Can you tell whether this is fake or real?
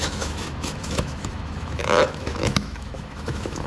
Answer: fake